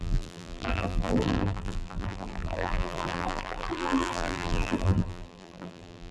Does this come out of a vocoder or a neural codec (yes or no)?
yes